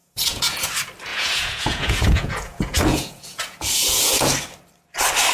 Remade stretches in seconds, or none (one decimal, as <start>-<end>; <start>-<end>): 0.0-0.7; 1.1-4.3